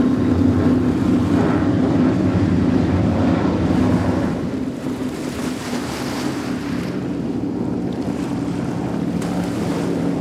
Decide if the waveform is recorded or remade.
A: remade